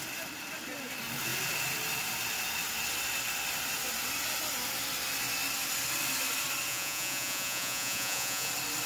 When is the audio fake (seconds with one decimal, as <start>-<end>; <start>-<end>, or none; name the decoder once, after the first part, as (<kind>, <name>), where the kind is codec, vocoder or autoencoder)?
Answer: 6.7-8.5 (vocoder, Vocos)